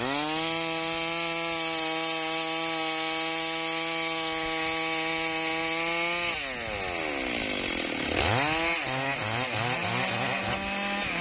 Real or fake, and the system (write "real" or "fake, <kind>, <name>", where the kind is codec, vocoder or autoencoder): real